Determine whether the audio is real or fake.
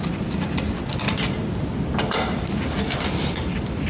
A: fake